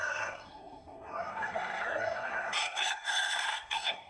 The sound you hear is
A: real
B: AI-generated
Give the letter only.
B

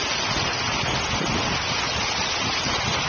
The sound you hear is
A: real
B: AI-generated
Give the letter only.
A